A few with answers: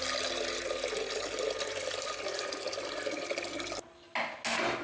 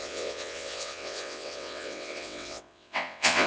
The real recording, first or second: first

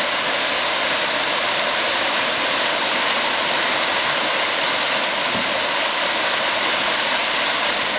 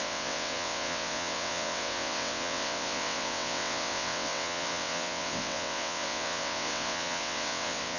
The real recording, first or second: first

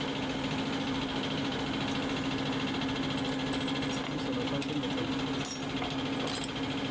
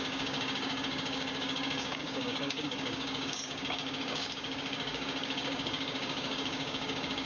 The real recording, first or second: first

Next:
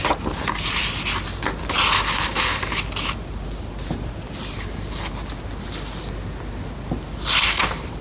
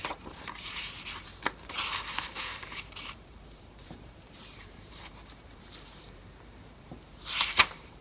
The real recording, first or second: first